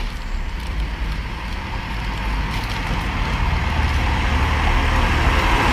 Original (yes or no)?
yes